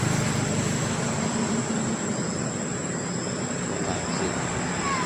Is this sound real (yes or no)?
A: yes